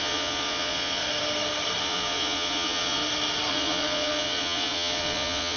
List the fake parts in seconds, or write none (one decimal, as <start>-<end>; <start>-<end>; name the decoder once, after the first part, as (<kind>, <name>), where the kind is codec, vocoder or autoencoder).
0.0-1.0 (vocoder, Vocos); 1.8-3.0; 3.5-5.6